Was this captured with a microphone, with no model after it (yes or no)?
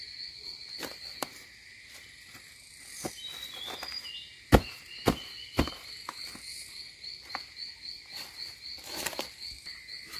yes